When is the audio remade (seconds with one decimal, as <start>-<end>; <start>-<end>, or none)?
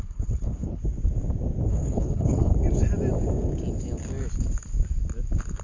0.0-0.8; 1.7-2.5